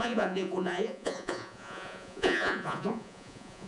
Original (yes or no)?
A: no